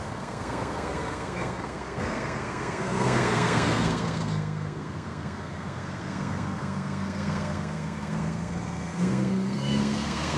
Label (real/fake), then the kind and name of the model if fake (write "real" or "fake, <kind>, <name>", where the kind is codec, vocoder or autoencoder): fake, codec, SNAC